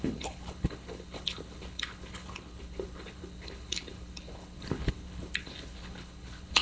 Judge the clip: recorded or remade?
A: remade